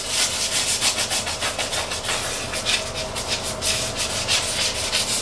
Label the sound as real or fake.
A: real